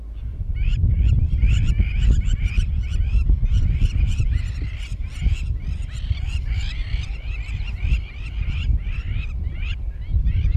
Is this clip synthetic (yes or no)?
no